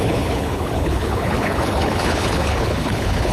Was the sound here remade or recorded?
remade